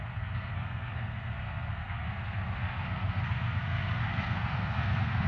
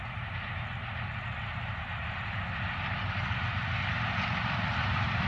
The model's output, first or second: first